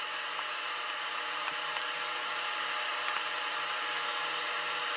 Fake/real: fake